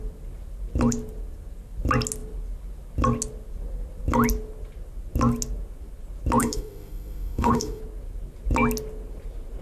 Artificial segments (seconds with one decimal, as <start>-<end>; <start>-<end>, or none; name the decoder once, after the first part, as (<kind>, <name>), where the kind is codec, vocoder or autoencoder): 6.4-7.8 (autoencoder, DAC-VAE)